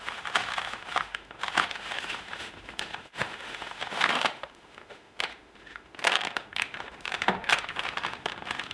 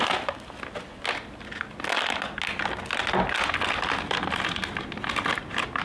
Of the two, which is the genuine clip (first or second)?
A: second